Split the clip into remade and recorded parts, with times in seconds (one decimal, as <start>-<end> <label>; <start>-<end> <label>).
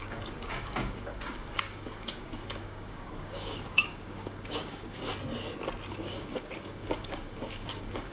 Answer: 0.0-5.1 remade; 5.1-5.9 recorded; 5.9-8.1 remade